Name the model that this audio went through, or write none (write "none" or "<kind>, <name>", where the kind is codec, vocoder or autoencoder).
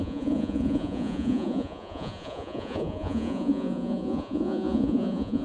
vocoder, Vocos